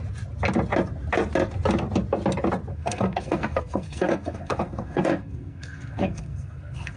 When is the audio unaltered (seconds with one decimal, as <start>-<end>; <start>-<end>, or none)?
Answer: 0.0-2.7